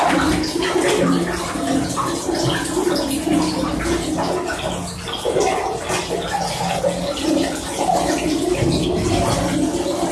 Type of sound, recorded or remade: recorded